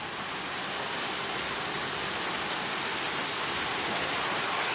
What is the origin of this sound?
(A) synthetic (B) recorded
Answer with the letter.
B